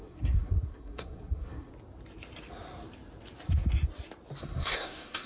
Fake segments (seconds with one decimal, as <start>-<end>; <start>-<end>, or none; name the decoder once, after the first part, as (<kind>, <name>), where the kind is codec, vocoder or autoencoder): 0.0-1.7 (codec, SNAC); 4.4-5.3